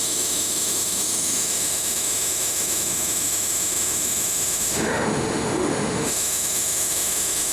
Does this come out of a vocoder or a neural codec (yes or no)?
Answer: yes